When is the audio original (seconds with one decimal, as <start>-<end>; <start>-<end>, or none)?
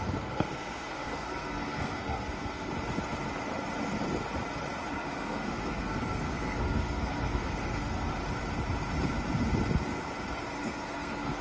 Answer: 2.7-4.9; 8.1-10.3